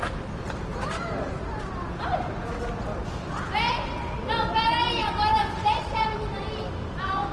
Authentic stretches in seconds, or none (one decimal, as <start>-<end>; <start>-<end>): 0.0-0.7; 1.7-5.0; 6.4-7.3